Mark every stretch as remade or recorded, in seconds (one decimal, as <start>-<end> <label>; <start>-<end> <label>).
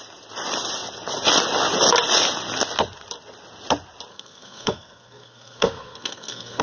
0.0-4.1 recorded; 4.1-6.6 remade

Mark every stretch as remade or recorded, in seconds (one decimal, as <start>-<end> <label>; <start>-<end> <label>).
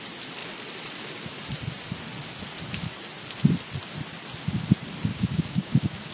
0.0-5.1 recorded; 5.1-6.1 remade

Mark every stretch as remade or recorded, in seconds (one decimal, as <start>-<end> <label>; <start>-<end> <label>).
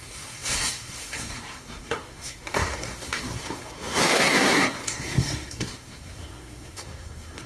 0.0-7.5 remade